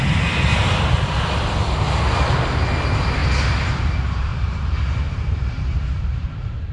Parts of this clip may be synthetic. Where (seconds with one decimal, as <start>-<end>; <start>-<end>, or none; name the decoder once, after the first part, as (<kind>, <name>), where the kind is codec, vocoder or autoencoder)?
4.3-6.7 (vocoder, BigVGAN v2)

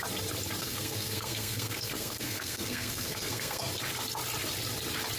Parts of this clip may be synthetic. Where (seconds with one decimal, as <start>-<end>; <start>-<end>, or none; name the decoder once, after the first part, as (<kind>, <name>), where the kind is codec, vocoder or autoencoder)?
0.6-3.7 (codec, SNAC)

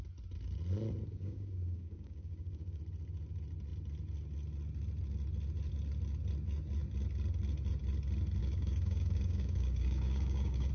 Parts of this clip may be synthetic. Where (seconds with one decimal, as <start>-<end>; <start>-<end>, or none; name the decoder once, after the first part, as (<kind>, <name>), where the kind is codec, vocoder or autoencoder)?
1.1-2.8 (codec, DAC); 8.4-10.7

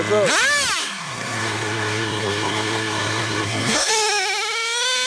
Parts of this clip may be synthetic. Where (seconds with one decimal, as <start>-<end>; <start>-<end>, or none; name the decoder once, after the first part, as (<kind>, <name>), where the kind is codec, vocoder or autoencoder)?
0.8-3.9 (codec, SNAC)

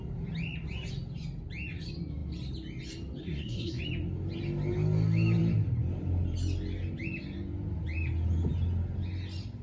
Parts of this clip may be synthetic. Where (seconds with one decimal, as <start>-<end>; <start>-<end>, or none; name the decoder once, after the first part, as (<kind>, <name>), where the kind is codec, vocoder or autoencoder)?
3.2-3.8 (codec, SNAC)

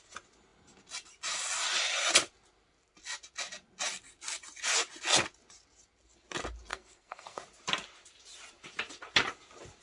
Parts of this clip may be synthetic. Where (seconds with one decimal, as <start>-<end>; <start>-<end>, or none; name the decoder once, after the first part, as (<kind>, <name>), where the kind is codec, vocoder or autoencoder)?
6.7-7.4 (codec, SNAC)

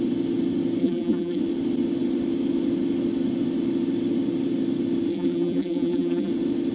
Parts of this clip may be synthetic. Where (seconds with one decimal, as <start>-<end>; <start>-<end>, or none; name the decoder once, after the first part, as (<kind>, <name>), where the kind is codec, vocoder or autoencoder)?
0.8-1.4 (vocoder, BigVGAN v2); 5.1-6.3